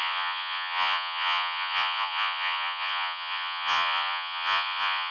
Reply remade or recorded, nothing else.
remade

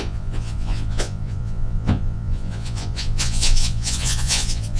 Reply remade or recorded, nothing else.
remade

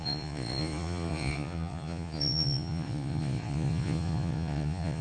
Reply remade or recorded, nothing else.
remade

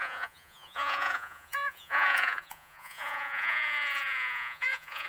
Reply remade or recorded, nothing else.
remade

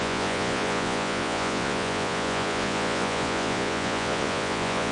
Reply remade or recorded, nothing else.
remade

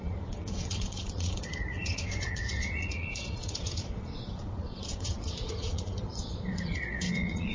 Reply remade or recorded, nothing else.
remade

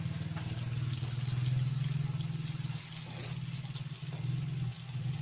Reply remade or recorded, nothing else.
recorded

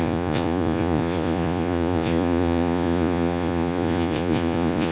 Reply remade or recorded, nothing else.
remade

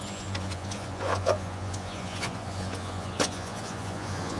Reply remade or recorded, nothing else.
remade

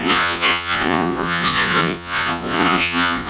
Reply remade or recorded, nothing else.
remade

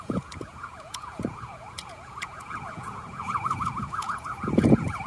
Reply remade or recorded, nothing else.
remade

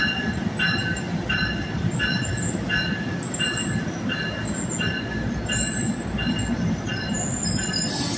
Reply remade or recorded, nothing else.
recorded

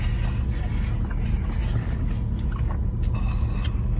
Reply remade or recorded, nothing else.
recorded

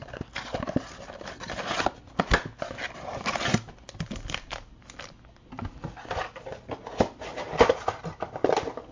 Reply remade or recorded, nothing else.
recorded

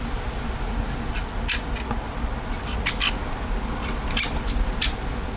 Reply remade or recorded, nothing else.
recorded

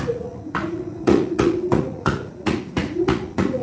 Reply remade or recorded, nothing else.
remade